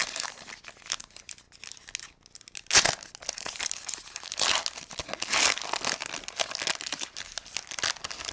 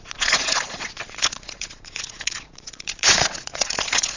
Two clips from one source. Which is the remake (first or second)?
second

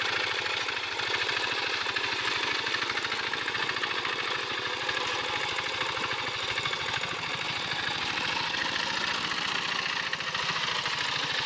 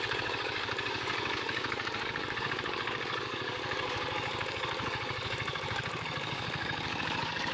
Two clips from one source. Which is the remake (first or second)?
second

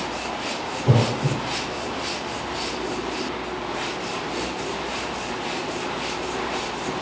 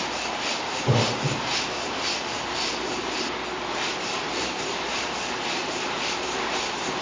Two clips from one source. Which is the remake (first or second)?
second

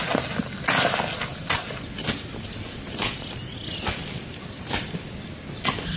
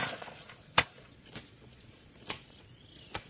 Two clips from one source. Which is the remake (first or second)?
second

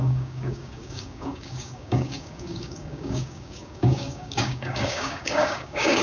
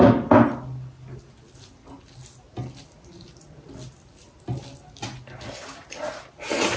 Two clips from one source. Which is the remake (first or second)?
first